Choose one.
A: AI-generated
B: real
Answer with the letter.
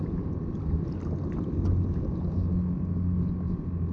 B